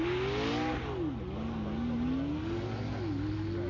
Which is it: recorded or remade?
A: recorded